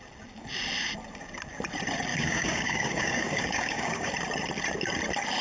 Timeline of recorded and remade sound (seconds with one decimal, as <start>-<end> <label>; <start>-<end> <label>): 0.0-2.1 recorded; 2.1-4.1 remade; 4.1-5.4 recorded

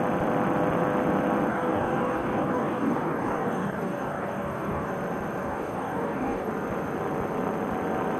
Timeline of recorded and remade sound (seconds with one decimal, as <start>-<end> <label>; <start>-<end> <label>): 0.0-1.5 recorded; 1.5-4.9 remade; 4.9-5.4 recorded; 5.4-6.5 remade; 6.5-8.2 recorded

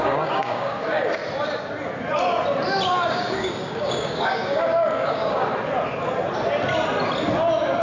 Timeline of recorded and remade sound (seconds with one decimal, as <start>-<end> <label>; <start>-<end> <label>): 0.0-1.2 remade; 1.2-3.1 recorded; 3.1-5.4 remade; 5.4-7.8 recorded

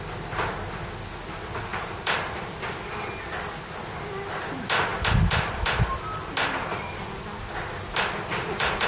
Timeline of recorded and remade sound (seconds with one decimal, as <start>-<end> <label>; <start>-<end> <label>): 0.0-1.7 recorded; 1.7-2.5 remade; 2.5-8.9 recorded

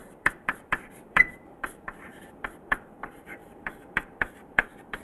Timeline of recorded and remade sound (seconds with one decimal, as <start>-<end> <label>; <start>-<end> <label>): 0.0-5.0 remade